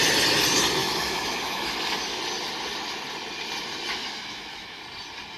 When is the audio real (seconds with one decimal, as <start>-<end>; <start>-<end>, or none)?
0.0-0.8; 2.2-4.0; 4.8-5.4